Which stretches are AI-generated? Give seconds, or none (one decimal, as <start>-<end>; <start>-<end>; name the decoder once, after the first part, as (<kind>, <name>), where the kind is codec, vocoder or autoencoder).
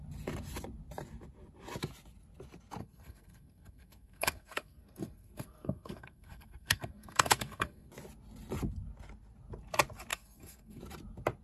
2.8-7.9 (codec, SNAC); 10.1-10.8